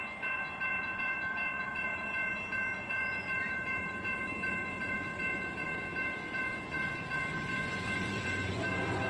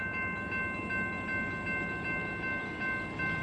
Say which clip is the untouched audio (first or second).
second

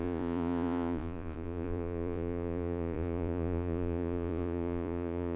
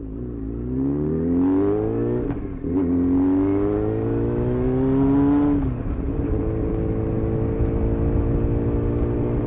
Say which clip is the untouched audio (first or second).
second